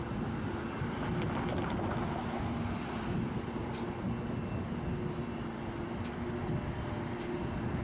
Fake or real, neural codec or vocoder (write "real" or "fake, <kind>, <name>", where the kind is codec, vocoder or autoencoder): real